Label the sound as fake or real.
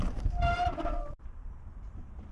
real